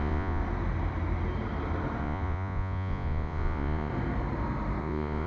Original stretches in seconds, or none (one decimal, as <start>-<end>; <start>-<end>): 0.4-2.0; 3.9-4.8